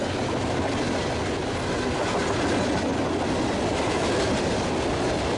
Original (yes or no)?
yes